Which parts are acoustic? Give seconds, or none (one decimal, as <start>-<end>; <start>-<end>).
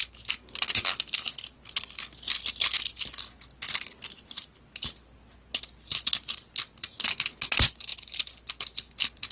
0.0-9.3